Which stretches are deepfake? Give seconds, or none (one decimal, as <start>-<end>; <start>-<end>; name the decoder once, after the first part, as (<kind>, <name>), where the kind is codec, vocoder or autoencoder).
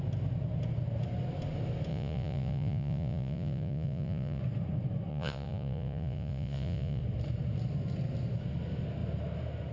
1.9-4.4 (vocoder, Vocos); 5.1-7.0